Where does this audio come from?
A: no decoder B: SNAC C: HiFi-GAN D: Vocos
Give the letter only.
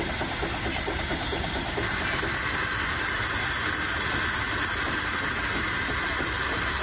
A